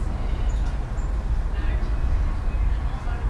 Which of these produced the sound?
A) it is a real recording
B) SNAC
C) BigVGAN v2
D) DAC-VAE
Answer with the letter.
A